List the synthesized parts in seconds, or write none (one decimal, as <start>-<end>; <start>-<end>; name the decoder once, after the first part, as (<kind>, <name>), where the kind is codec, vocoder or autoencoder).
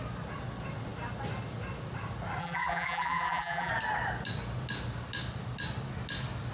2.4-3.7 (vocoder, BigVGAN v2)